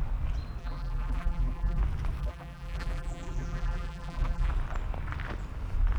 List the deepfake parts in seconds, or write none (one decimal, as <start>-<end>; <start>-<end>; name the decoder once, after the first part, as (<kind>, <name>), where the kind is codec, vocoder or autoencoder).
0.6-1.8 (vocoder, BigVGAN v2); 2.2-4.5